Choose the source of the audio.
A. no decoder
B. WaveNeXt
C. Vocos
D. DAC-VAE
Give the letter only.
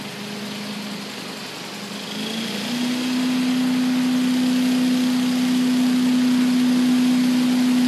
A